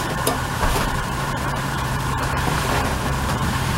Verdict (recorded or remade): remade